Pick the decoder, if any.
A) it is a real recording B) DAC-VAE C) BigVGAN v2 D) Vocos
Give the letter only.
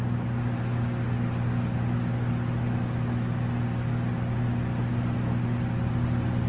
A